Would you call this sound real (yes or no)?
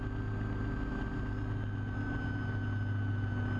yes